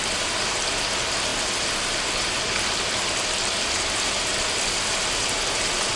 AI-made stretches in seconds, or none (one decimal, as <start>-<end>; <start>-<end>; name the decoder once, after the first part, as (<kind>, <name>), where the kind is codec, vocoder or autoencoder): none